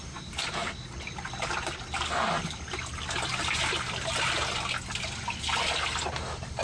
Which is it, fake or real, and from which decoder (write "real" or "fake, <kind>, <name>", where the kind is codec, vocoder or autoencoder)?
real